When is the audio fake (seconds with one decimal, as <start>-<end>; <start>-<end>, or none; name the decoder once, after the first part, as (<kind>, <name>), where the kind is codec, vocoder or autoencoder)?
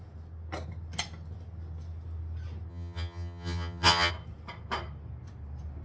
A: 2.7-4.1 (vocoder, HiFi-GAN)